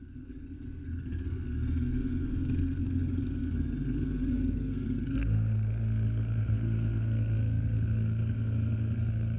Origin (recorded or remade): remade